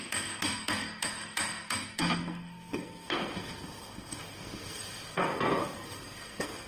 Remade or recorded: remade